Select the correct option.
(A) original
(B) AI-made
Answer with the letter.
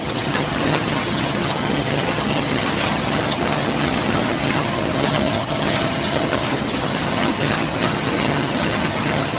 B